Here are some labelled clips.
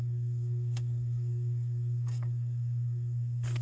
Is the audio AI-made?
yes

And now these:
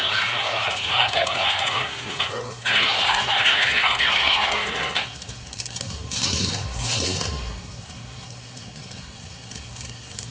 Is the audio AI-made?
yes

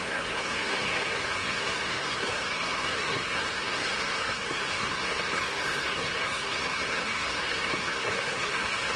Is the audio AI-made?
yes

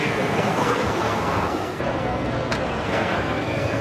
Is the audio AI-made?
yes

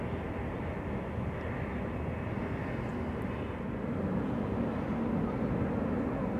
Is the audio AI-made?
no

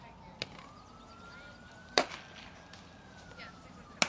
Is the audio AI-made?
no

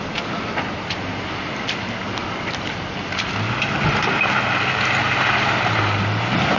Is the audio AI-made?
no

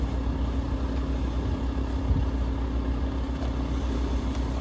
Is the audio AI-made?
no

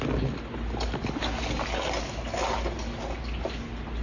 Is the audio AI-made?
no